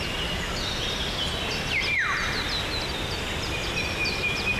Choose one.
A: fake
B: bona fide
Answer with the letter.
B